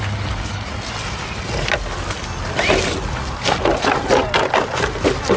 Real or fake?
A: real